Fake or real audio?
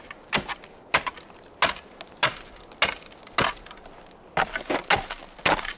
real